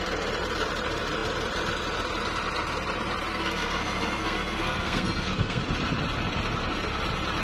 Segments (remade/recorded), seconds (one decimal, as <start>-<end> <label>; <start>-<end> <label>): 0.0-3.3 recorded; 3.3-5.6 remade; 5.6-7.4 recorded